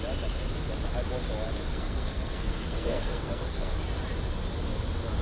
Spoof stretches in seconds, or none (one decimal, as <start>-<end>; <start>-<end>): 1.7-3.8